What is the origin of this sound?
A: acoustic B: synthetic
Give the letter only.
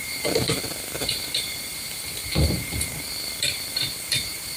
B